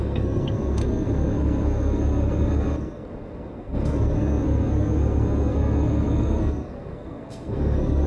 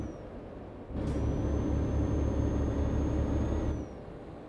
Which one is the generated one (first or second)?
first